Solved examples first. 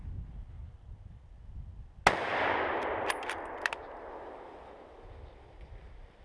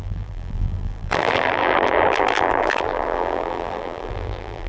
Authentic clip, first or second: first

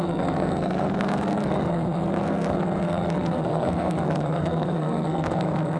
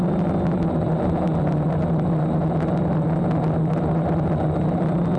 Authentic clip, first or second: second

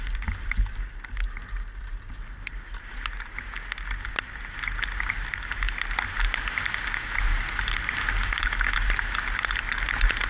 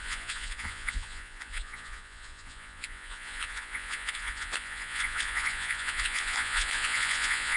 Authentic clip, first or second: first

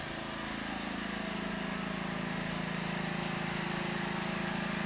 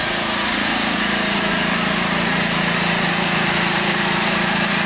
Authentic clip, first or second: first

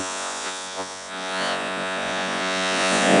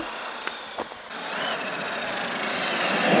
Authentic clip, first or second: second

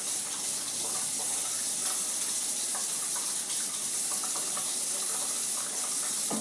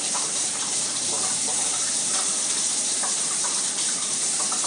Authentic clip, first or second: first